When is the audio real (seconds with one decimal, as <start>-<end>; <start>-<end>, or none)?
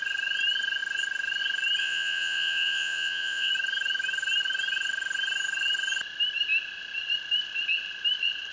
0.0-1.8; 3.5-8.5